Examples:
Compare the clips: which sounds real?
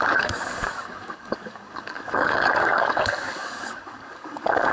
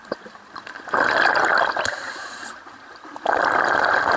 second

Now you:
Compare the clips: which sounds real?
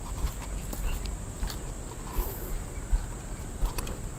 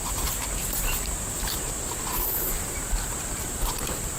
first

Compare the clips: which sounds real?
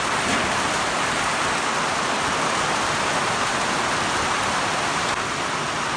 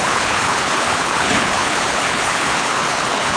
first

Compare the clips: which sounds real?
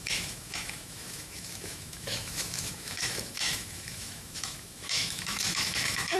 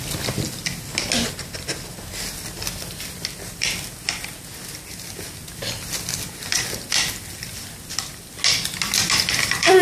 second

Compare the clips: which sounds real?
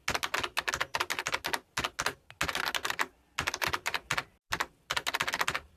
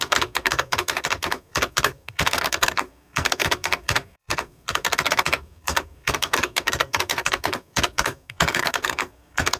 first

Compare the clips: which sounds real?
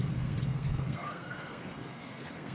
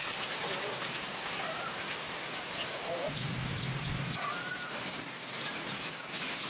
second